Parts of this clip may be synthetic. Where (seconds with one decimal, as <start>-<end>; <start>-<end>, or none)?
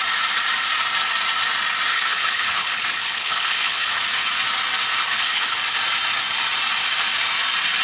1.9-4.0; 4.9-5.6